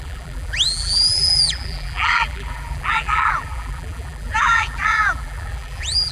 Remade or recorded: remade